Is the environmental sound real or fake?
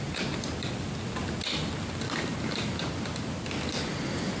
real